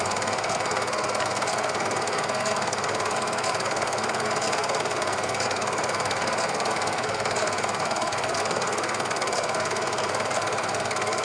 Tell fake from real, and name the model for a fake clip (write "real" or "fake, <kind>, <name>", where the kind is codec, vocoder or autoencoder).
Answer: fake, codec, SNAC